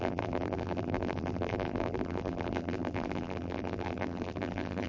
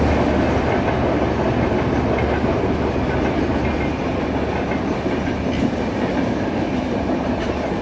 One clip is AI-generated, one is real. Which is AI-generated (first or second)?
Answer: first